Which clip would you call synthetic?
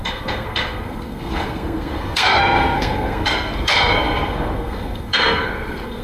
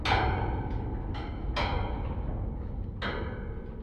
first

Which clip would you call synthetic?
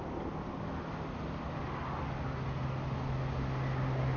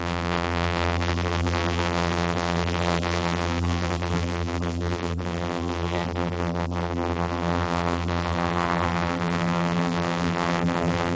second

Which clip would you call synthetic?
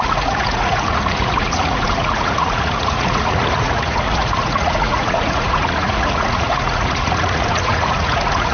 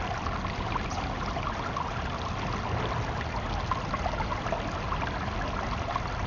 first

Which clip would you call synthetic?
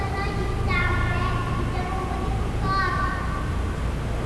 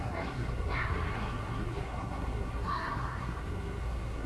second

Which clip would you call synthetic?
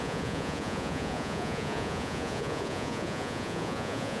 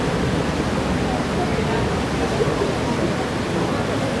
first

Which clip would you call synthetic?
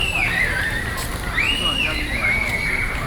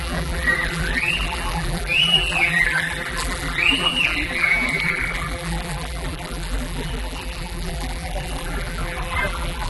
second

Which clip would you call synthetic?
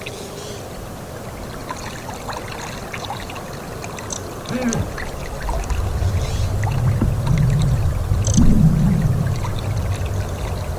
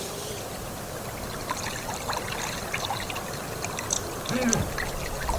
second